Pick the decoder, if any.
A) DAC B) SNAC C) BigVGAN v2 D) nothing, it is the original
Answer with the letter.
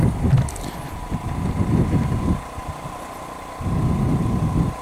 D